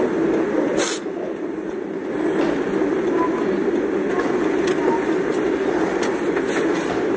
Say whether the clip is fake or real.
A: real